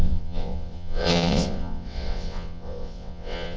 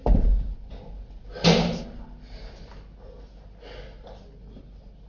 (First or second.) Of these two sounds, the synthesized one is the first